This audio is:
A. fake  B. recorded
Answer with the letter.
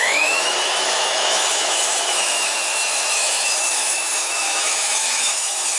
A